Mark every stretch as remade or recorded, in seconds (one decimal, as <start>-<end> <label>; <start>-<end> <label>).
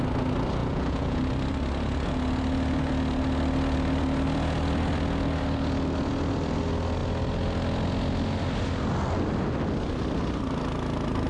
0.0-0.6 recorded; 0.6-1.2 remade; 1.2-11.3 recorded